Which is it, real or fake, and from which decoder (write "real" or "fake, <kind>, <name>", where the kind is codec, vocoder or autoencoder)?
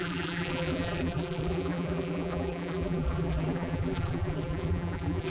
fake, vocoder, BigVGAN v2